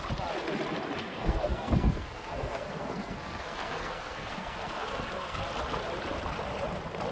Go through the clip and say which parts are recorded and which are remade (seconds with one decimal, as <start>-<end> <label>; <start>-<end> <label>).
0.0-1.1 recorded; 1.1-5.4 remade; 5.4-7.1 recorded